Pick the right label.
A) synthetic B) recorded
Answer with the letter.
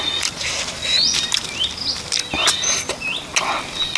B